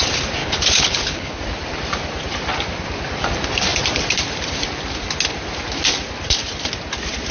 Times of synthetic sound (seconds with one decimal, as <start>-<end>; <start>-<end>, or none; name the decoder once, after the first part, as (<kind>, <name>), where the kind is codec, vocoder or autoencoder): 0.4-1.4 (codec, HILCodec)